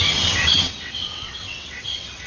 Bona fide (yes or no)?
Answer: no